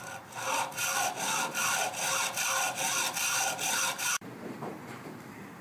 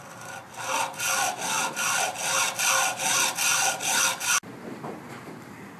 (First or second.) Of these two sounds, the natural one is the second